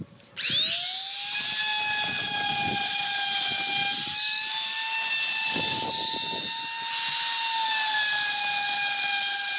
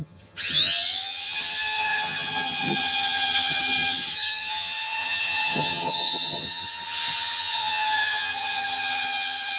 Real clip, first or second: first